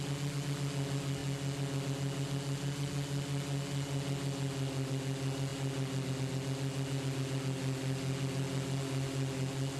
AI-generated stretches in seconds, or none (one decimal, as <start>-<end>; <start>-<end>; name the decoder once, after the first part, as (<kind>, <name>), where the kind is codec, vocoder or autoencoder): none